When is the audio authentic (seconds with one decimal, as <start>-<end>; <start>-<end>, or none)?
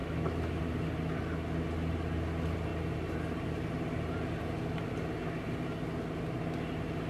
0.6-7.1